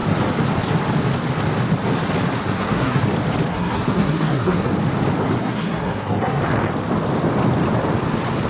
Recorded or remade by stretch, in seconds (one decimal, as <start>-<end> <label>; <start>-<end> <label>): 0.0-2.4 recorded; 2.4-3.0 remade; 3.0-3.5 recorded; 3.5-4.7 remade; 4.7-5.4 recorded; 5.4-6.4 remade; 6.4-8.5 recorded